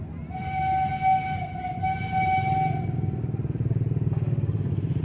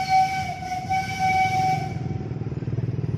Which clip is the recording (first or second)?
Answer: first